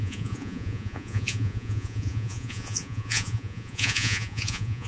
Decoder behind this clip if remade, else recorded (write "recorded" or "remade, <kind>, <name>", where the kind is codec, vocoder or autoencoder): remade, vocoder, Vocos